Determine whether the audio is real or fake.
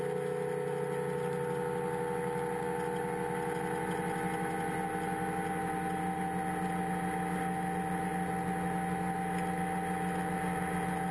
real